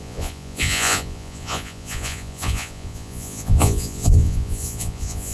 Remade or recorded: remade